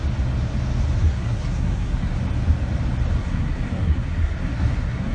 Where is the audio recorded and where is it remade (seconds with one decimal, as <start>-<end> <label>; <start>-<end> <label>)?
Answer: 0.0-1.0 recorded; 1.0-2.1 remade; 2.1-3.2 recorded; 3.2-5.1 remade